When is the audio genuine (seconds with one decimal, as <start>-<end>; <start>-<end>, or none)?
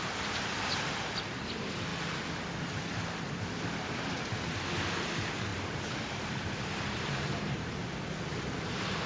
0.0-5.5; 8.1-9.1